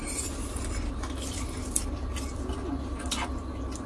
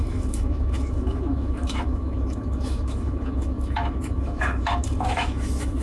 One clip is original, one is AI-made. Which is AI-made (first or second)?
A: second